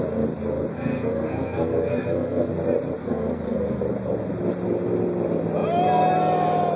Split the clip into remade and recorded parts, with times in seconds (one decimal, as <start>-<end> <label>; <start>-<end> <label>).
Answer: 0.0-0.7 recorded; 0.7-2.5 remade; 2.5-3.0 recorded; 3.0-3.8 remade; 3.8-6.8 recorded

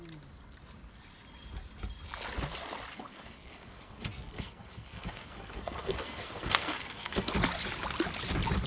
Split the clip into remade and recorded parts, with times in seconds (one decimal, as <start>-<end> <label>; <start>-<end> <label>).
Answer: 0.0-2.9 recorded; 2.9-7.3 remade; 7.3-8.7 recorded

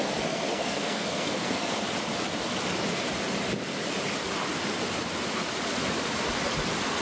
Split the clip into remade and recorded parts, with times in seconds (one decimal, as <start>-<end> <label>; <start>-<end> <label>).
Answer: 0.0-1.8 remade; 1.8-7.0 recorded

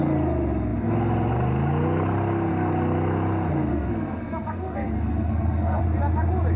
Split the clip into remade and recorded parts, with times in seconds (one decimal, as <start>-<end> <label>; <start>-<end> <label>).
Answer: 0.0-3.7 recorded; 3.7-5.8 remade; 5.8-6.6 recorded

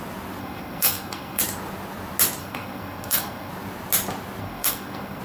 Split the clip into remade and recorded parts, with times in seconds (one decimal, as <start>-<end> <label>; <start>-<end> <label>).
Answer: 0.0-0.4 recorded; 0.4-1.4 remade; 1.4-2.4 recorded; 2.4-3.5 remade; 3.5-4.4 recorded; 4.4-5.2 remade

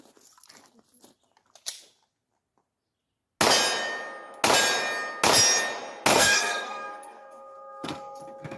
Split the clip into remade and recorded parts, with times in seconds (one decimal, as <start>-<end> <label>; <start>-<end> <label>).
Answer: 0.0-6.1 recorded; 6.1-8.2 remade; 8.2-8.6 recorded